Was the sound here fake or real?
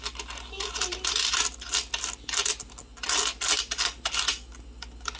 real